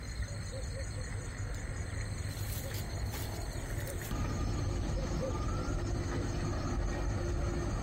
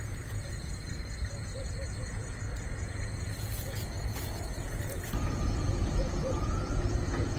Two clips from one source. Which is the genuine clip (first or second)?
first